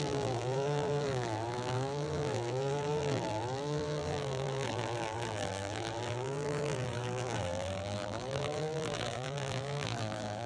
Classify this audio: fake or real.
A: fake